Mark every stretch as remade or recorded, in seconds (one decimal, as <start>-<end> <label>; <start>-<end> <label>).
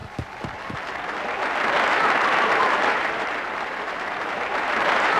0.0-2.9 recorded; 2.9-5.2 remade